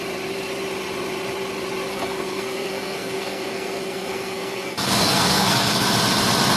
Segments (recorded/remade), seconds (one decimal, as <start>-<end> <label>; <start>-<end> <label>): 0.0-1.9 recorded; 1.9-5.9 remade; 5.9-6.6 recorded